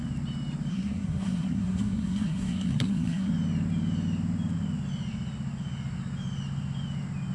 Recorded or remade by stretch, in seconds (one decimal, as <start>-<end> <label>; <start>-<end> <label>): 0.0-0.7 recorded; 0.7-3.3 remade; 3.3-7.3 recorded